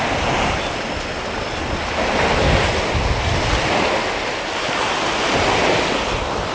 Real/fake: real